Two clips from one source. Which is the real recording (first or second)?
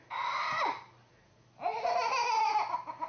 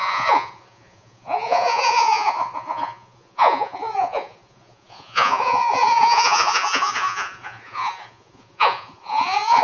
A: first